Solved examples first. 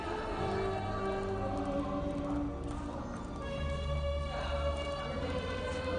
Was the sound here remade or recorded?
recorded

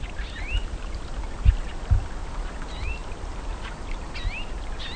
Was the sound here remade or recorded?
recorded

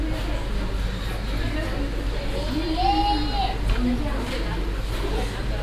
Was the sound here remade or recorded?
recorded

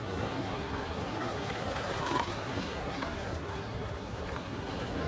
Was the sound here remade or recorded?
remade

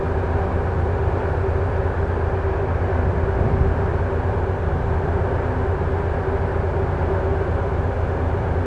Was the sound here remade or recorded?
recorded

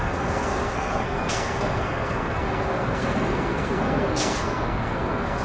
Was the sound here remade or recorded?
remade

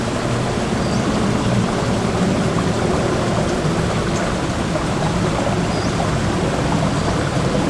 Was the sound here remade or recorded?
recorded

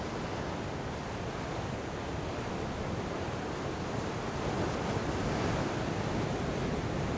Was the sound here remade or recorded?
recorded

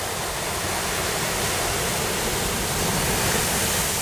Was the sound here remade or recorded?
recorded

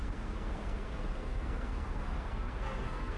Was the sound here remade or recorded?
remade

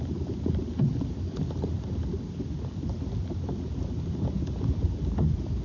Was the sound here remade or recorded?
recorded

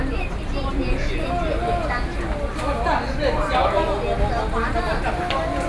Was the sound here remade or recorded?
recorded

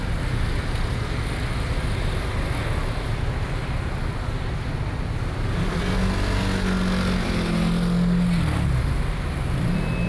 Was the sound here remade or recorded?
recorded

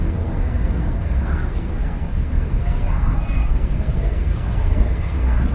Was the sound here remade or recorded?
remade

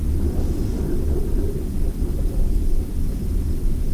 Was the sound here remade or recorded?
recorded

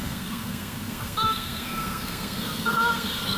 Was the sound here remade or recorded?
remade